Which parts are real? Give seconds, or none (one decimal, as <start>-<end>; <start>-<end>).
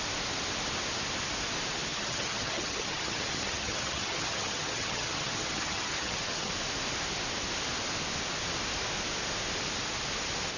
0.0-1.9; 6.5-10.6